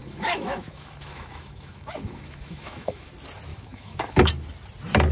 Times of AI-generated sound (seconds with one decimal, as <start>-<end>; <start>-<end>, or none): 0.0-3.1; 3.5-4.3